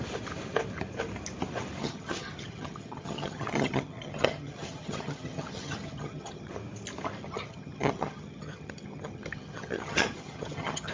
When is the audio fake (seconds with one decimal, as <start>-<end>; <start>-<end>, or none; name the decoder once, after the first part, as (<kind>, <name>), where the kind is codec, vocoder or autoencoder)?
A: 1.8-6.5 (vocoder, HiFi-GAN); 7.2-10.9